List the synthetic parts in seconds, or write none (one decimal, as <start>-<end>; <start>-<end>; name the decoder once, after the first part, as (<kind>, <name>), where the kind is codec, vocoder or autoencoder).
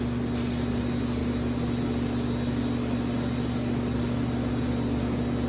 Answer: none